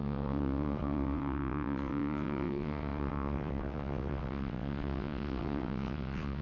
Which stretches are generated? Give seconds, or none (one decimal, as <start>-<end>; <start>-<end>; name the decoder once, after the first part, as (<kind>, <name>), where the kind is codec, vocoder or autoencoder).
0.0-6.4 (vocoder, WaveNeXt)